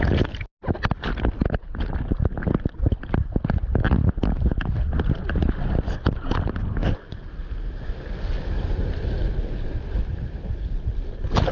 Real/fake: real